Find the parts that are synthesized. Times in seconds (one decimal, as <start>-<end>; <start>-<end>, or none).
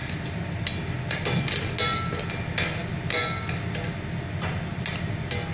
none